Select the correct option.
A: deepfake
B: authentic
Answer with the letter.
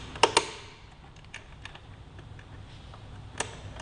B